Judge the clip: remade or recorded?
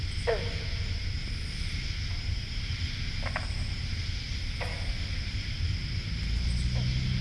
recorded